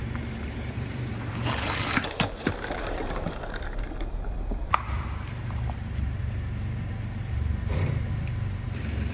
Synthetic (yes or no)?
yes